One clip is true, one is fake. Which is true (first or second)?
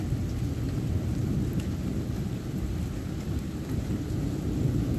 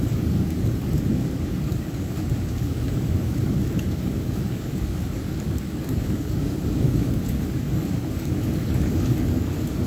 first